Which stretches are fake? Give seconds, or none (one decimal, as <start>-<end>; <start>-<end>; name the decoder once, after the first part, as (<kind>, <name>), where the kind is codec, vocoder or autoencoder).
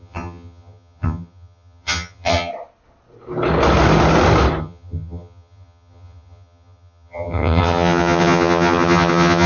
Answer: 0.0-2.5 (vocoder, HiFi-GAN); 4.6-9.5